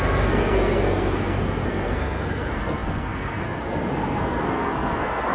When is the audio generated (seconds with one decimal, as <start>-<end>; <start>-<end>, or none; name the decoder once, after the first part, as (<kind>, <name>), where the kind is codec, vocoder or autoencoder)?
0.0-5.3 (codec, SNAC)